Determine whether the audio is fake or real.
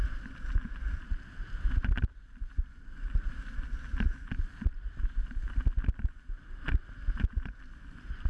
real